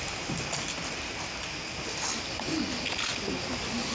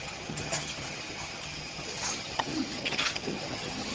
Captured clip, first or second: first